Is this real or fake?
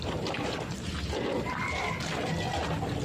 real